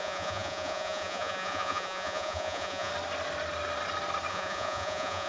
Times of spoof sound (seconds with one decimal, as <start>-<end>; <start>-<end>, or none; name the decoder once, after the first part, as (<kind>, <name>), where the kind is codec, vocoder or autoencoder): 0.0-2.9 (vocoder, Vocos); 4.3-5.3